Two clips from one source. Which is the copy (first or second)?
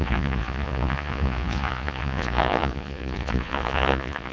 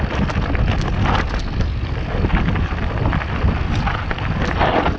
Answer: first